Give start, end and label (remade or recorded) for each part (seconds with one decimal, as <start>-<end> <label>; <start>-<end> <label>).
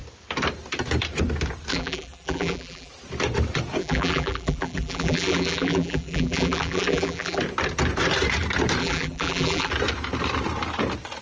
0.0-1.7 recorded; 1.7-2.9 remade; 2.9-3.8 recorded; 3.8-7.4 remade; 7.4-8.8 recorded; 8.8-9.7 remade; 9.7-11.2 recorded